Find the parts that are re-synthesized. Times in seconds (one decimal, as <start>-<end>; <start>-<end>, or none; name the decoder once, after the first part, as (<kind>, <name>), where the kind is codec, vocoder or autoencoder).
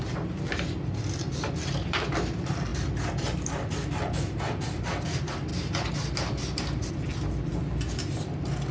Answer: 0.0-7.5 (vocoder, BigVGAN v2); 8.2-8.7